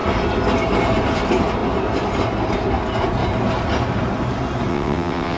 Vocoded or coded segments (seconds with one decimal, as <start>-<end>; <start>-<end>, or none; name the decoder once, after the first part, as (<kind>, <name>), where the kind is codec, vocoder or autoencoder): 4.7-5.4 (vocoder, WaveNeXt)